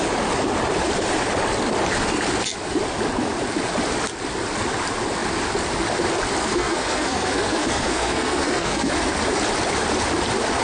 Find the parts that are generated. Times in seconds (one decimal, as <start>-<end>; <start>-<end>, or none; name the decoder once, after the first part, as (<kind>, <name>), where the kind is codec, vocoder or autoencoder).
6.4-8.9 (codec, SNAC)